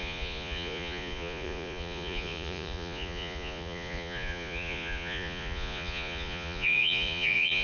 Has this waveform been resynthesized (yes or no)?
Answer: yes